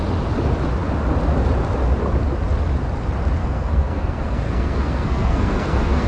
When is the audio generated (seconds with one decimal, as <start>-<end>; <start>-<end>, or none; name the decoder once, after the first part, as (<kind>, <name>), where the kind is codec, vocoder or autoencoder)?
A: 3.4-6.1 (codec, SNAC)